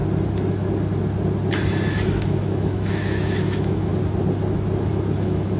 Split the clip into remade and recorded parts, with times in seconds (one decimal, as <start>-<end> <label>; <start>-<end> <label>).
0.0-2.2 recorded; 2.2-3.9 remade; 3.9-4.9 recorded; 4.9-5.6 remade